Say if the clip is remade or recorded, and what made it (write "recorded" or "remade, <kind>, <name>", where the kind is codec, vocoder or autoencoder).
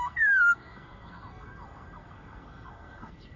remade, codec, SNAC